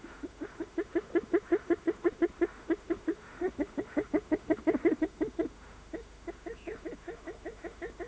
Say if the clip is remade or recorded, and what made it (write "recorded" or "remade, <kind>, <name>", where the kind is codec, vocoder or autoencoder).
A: remade, autoencoder, DAC-VAE